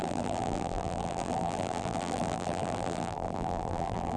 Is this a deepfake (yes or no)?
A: yes